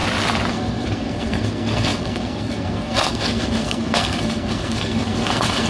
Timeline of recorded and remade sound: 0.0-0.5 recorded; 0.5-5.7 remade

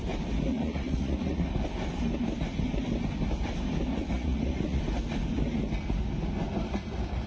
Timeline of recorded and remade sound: 0.0-0.5 recorded; 0.5-1.5 remade; 1.5-3.9 recorded; 3.9-4.8 remade; 4.8-7.3 recorded

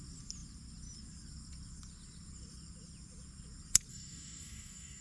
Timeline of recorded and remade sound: 0.0-3.9 recorded; 3.9-5.0 remade

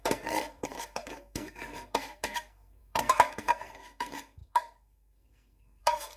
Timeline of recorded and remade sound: 0.0-6.2 remade

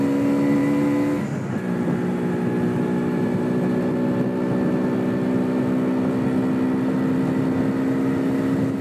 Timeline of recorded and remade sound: 0.0-8.8 recorded

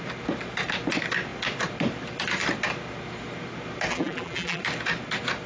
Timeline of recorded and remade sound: 0.0-3.9 recorded; 3.9-4.6 remade; 4.6-5.5 recorded

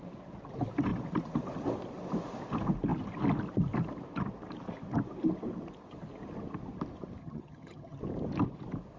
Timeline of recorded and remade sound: 0.0-7.2 recorded; 7.2-8.0 remade; 8.0-9.0 recorded

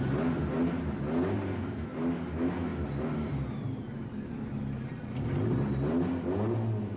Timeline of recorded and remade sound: 0.0-7.0 recorded